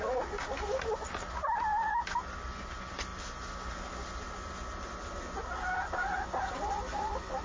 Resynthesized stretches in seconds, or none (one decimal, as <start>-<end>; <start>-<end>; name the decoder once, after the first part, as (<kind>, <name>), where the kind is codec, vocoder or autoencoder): none